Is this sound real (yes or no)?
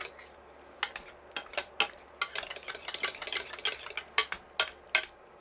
yes